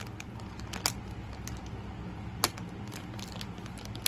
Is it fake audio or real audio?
real